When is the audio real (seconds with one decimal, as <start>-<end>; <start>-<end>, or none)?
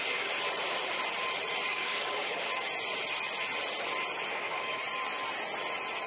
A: 0.0-1.7; 2.4-4.3; 4.8-6.1